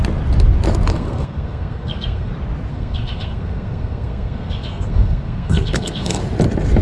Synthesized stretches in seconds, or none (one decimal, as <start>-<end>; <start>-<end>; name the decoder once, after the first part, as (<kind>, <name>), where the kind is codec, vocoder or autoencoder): 0.9-2.3 (codec, SNAC); 2.7-6.2